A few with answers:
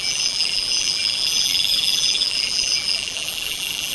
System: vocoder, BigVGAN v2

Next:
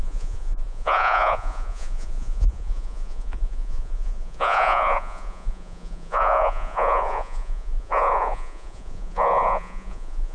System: vocoder, Vocos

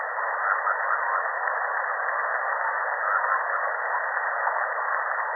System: none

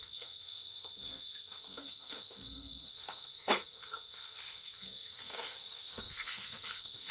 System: codec, SNAC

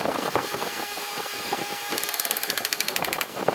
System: codec, SNAC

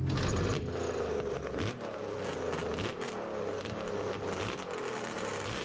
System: none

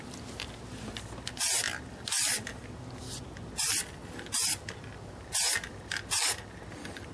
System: none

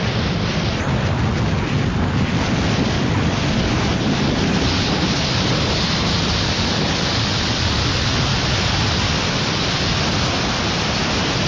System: none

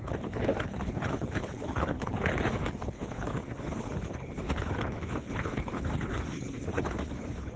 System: codec, HILCodec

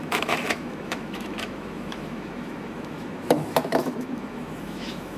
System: autoencoder, DAC-VAE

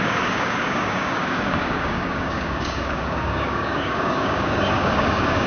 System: codec, DAC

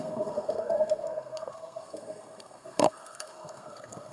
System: codec, SNAC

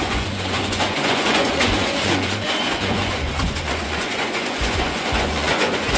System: vocoder, Vocos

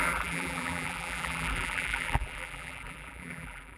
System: vocoder, BigVGAN v2